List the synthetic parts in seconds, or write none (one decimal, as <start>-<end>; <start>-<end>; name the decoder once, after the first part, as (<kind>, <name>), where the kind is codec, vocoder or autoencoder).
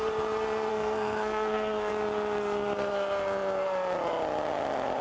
0.7-1.9 (codec, SNAC)